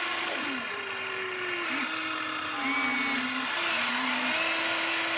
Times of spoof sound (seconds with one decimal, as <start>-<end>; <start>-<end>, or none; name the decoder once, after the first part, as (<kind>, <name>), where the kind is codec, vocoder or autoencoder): none